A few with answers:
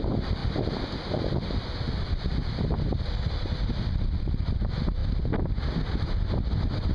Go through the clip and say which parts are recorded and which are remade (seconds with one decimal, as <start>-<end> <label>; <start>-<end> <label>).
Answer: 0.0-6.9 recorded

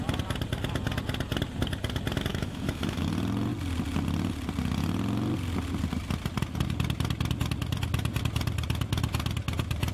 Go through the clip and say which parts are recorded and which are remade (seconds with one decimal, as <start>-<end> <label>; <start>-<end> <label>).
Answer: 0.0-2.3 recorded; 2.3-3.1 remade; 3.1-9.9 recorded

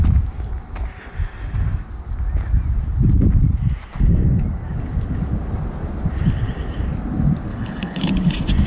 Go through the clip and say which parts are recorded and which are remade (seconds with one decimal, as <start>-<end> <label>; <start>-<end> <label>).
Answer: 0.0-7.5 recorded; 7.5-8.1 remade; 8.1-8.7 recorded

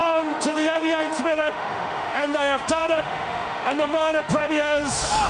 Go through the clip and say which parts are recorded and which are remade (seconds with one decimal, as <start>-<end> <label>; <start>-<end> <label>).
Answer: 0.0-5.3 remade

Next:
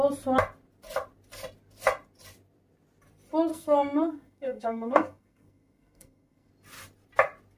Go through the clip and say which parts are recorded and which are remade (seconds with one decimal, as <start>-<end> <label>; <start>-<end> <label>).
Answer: 0.0-3.5 recorded; 3.5-6.5 remade; 6.5-7.6 recorded

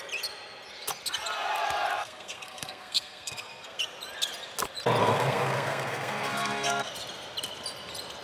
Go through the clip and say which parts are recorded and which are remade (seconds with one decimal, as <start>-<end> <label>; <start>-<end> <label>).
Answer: 0.0-2.0 recorded; 2.0-3.8 remade; 3.8-5.0 recorded; 5.0-6.9 remade; 6.9-8.2 recorded